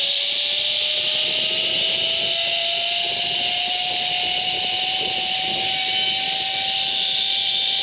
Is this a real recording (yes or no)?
yes